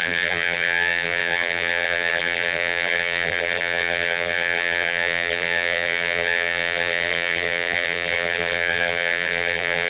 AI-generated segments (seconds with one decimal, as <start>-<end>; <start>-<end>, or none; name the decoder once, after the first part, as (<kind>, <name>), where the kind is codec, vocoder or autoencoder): 0.0-9.9 (vocoder, BigVGAN v2)